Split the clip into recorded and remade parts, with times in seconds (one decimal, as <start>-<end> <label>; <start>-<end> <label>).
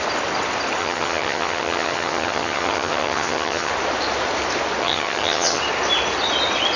0.0-0.8 recorded; 0.8-3.7 remade; 3.7-4.8 recorded; 4.8-5.6 remade; 5.6-6.8 recorded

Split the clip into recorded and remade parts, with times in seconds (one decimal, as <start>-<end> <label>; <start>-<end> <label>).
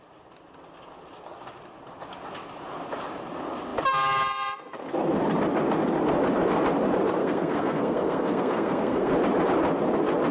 0.0-7.2 recorded; 7.2-9.1 remade; 9.1-10.3 recorded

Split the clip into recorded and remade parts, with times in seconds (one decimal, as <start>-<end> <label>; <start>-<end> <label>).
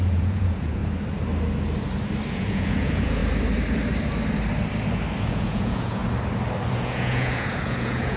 0.0-0.8 remade; 0.8-2.3 recorded; 2.3-3.2 remade; 3.2-5.2 recorded; 5.2-6.0 remade; 6.0-6.7 recorded; 6.7-8.2 remade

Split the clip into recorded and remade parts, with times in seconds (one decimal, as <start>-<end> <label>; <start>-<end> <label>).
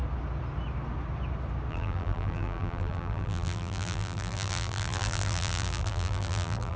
0.0-1.7 recorded; 1.7-6.8 remade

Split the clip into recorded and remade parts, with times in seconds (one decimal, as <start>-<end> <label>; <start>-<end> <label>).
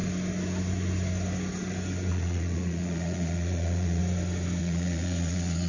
0.0-2.1 recorded; 2.1-4.0 remade; 4.0-4.6 recorded; 4.6-5.7 remade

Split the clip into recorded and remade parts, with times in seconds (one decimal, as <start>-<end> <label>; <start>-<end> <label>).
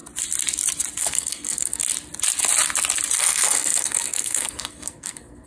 0.0-1.0 recorded; 1.0-1.8 remade; 1.8-3.2 recorded; 3.2-5.5 remade